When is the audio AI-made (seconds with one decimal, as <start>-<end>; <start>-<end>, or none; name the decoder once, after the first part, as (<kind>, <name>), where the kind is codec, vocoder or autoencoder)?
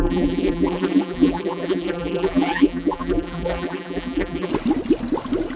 0.0-4.5 (vocoder, BigVGAN v2)